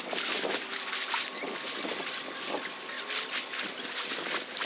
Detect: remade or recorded recorded